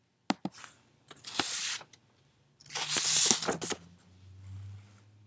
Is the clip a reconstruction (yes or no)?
no